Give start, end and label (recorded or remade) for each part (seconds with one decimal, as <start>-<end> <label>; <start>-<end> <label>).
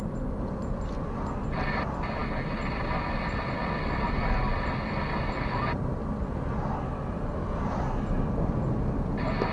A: 0.0-9.5 recorded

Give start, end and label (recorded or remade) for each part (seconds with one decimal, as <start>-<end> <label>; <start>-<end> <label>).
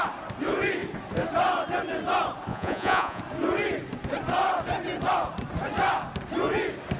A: 0.0-2.5 recorded; 2.5-3.2 remade; 3.2-7.0 recorded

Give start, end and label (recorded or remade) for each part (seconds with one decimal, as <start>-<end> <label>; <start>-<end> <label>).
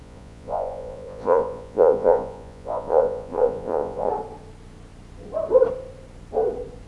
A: 0.0-4.1 remade; 4.1-6.9 recorded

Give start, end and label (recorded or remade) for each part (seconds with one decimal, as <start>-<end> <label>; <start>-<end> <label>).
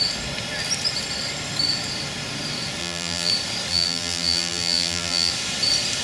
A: 0.0-2.8 recorded; 2.8-3.3 remade; 3.3-3.7 recorded; 3.7-5.3 remade; 5.3-6.0 recorded